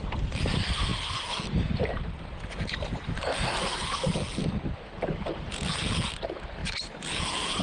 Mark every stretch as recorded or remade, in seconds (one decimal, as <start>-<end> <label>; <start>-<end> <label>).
0.0-7.6 remade